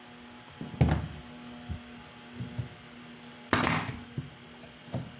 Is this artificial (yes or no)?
no